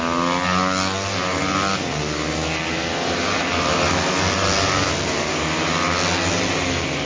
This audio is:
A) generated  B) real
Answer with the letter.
B